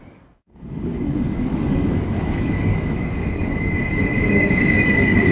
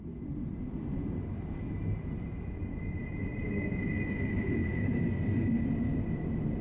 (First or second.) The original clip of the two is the second